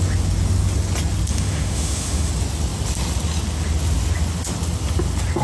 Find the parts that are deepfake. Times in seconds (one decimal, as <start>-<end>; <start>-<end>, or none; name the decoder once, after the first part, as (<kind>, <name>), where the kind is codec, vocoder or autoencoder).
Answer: 1.3-2.3 (autoencoder, DAC-VAE)